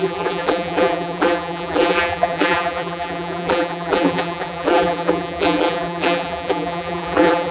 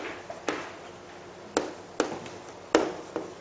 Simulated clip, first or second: first